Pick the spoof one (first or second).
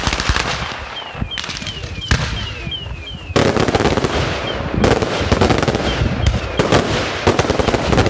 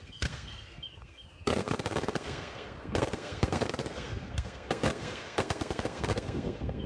second